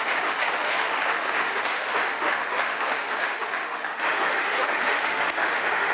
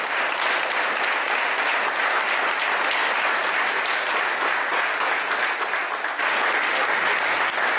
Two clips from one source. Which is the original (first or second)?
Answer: second